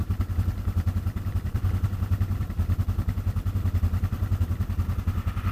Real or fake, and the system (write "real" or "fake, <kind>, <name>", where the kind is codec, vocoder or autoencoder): fake, vocoder, BigVGAN v2